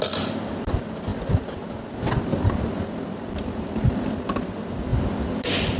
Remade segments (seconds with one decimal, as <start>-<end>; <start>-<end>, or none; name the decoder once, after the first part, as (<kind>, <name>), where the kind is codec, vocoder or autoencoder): 0.0-1.1 (vocoder, BigVGAN v2); 3.4-4.9